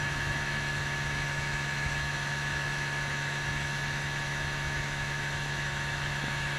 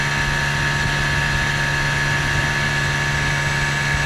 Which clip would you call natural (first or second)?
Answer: second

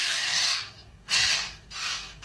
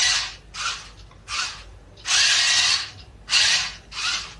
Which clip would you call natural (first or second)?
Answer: second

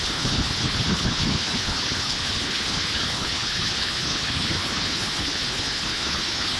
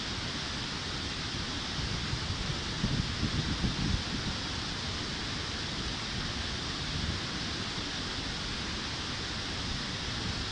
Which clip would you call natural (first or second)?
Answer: second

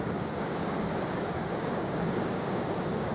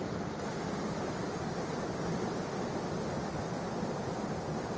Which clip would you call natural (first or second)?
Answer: second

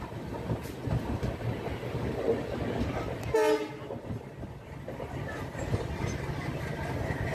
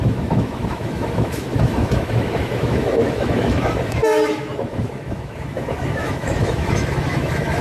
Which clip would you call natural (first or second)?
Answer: first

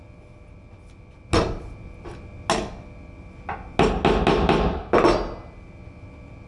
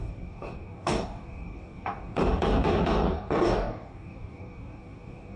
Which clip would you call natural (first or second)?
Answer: first